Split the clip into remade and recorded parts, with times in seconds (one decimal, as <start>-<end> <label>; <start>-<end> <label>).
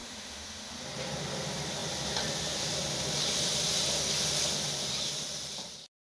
0.0-0.7 remade; 0.7-6.0 recorded